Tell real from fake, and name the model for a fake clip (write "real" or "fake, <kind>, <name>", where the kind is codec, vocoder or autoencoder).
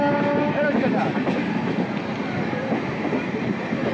real